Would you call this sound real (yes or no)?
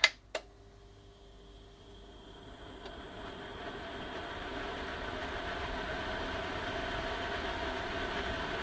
yes